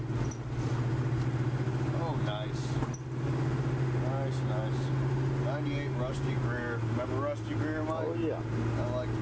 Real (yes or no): yes